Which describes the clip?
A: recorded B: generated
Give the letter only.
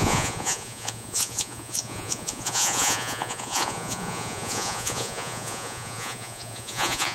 B